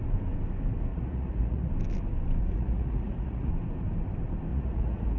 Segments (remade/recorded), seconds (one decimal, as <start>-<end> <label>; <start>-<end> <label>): 0.0-0.9 recorded; 0.9-1.7 remade; 1.7-2.4 recorded; 2.4-3.5 remade; 3.5-4.5 recorded; 4.5-5.2 remade